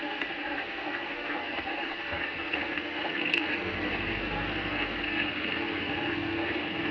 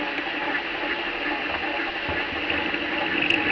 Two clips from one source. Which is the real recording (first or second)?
second